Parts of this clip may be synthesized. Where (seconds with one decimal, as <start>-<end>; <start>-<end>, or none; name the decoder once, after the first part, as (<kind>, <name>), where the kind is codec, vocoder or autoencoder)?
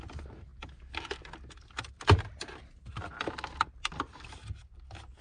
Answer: none